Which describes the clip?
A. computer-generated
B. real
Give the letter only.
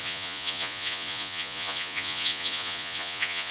A